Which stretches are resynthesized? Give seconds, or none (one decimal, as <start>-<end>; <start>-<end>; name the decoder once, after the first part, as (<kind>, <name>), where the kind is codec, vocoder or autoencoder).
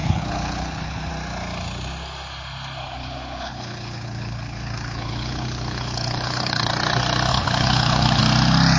0.0-1.1 (codec, HILCodec); 2.8-6.7; 7.3-8.2